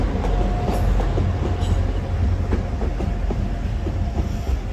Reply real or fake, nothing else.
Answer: real